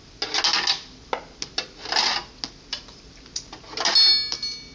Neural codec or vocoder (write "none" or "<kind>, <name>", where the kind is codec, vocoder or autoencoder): none